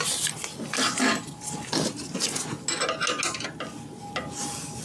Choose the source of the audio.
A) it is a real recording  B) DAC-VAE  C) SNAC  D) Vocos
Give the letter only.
A